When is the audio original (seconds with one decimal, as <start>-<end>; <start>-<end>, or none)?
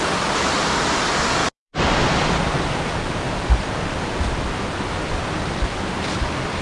0.0-1.4; 4.2-6.6